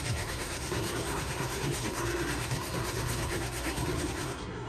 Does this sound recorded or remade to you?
remade